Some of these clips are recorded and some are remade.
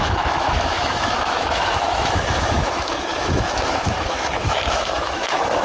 remade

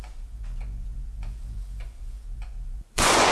remade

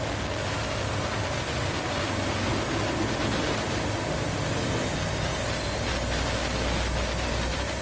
recorded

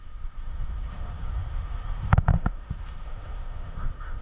remade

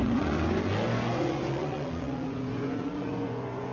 remade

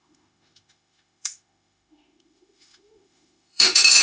remade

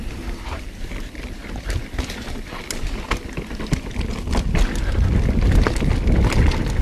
recorded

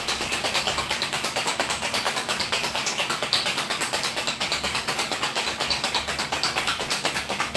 remade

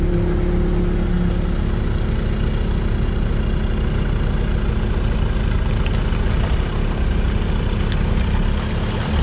recorded